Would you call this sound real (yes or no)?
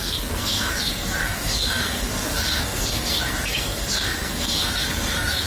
no